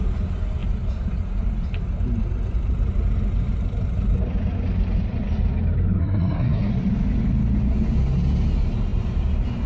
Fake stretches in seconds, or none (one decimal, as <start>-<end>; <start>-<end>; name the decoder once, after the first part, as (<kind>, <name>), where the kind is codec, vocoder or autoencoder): 6.0-6.7 (codec, SNAC)